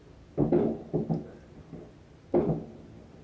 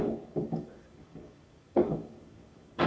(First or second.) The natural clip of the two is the first